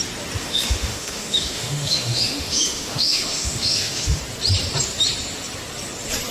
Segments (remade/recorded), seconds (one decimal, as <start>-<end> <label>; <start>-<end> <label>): 0.0-0.4 recorded; 0.4-4.2 remade; 4.2-6.3 recorded